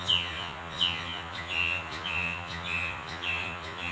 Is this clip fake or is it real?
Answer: fake